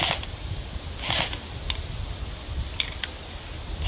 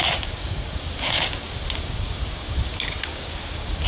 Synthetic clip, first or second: second